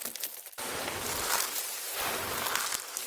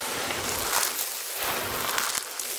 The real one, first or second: second